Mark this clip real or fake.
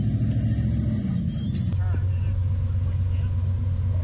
real